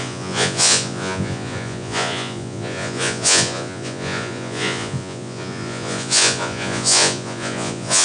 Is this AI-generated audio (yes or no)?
yes